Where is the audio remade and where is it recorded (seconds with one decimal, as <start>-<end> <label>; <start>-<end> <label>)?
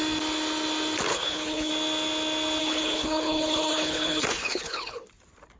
0.0-1.1 recorded; 1.1-1.7 remade; 1.7-2.6 recorded; 2.6-5.1 remade; 5.1-5.6 recorded